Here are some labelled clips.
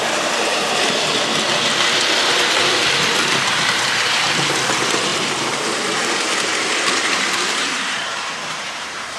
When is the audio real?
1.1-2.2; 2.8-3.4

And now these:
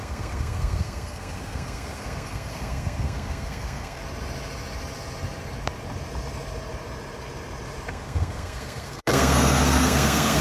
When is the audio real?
4.0-7.9

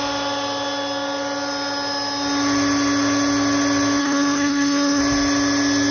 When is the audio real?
0.0-4.0; 5.0-5.9

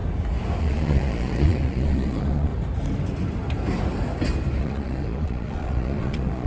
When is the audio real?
0.0-0.6; 2.5-4.6

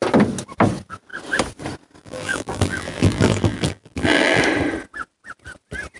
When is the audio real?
0.0-2.0; 4.4-6.0

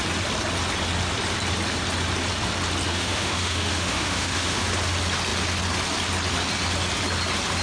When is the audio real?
0.0-2.9; 4.7-7.6

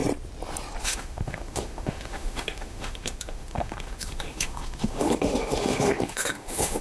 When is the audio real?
0.0-0.8

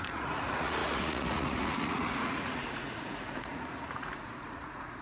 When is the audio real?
none